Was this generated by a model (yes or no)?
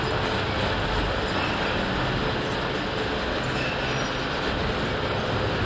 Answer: no